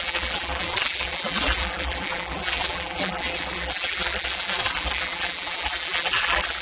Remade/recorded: remade